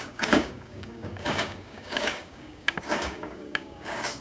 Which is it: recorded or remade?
remade